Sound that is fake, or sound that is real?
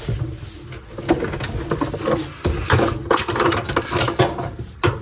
real